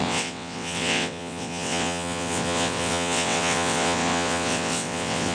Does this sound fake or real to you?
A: fake